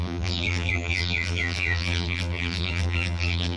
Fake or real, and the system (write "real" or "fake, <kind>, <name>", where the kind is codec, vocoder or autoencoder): fake, vocoder, BigVGAN v2